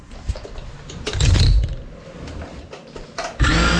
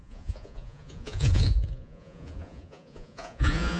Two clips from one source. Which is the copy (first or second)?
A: second